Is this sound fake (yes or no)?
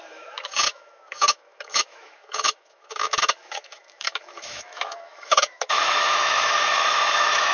yes